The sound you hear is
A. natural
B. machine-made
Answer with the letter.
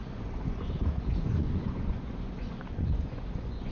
B